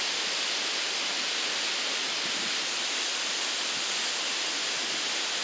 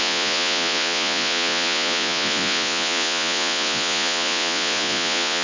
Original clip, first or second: first